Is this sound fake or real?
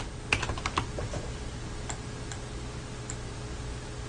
real